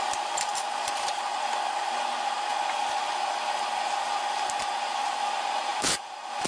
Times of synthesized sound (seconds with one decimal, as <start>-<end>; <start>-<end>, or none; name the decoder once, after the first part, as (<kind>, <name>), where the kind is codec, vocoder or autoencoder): 0.5-1.1 (vocoder, BigVGAN v2); 5.7-6.5